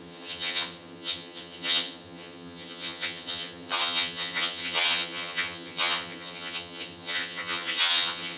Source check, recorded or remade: remade